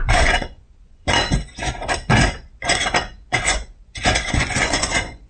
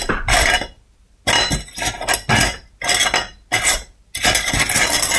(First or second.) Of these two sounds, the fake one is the first